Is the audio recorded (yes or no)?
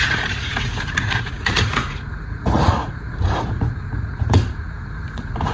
no